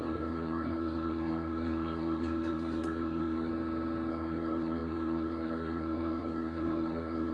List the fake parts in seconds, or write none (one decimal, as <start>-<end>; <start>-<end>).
0.0-3.5; 4.1-7.3